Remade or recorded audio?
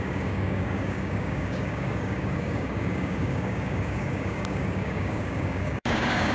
remade